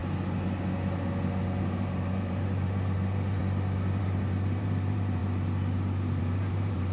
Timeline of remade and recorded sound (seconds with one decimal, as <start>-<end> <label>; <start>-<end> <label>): 0.0-1.6 recorded; 1.6-3.4 remade; 3.4-4.0 recorded; 4.0-5.2 remade; 5.2-6.2 recorded; 6.2-6.9 remade